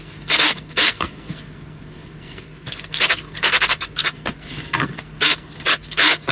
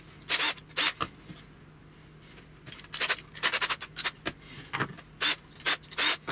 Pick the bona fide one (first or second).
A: second